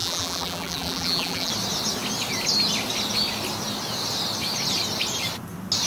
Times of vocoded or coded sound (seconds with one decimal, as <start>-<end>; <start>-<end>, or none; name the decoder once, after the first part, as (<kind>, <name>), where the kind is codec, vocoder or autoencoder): 0.0-1.5 (vocoder, BigVGAN v2)